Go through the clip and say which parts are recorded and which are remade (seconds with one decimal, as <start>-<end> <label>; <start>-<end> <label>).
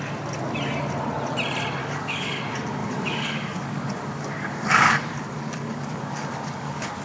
0.0-1.8 recorded; 1.8-2.4 remade; 2.4-2.8 recorded; 2.8-7.0 remade